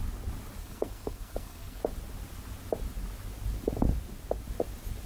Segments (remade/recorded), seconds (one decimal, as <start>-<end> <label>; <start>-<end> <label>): 0.0-0.6 recorded; 0.6-1.8 remade; 1.8-5.1 recorded